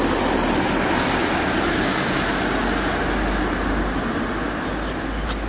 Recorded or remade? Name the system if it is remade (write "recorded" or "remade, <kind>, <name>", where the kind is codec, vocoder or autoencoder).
recorded